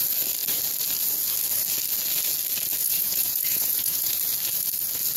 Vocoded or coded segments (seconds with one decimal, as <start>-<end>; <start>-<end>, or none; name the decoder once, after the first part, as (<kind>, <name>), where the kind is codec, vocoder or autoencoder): 2.8-4.2 (vocoder, Vocos)

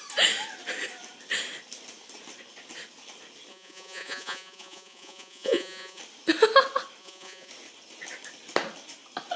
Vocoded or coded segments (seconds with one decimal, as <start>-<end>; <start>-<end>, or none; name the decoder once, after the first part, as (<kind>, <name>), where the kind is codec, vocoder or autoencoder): 3.5-6.0 (vocoder, Vocos); 7.0-7.5